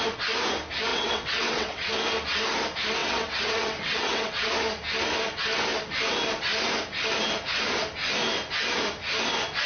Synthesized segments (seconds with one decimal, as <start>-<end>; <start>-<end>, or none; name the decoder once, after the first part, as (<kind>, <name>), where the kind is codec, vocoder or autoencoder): 0.9-1.9 (vocoder, WaveNeXt); 3.0-4.5